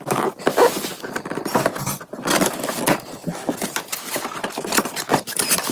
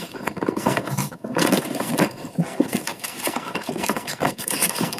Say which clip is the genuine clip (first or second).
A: first